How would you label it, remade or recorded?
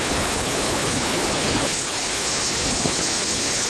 remade